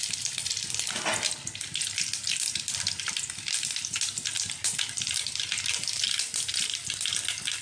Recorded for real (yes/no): yes